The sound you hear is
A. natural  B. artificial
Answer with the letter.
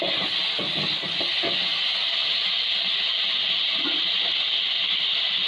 A